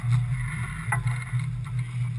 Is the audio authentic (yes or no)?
yes